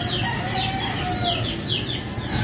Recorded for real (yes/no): yes